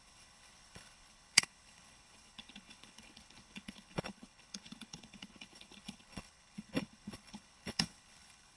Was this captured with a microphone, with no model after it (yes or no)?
no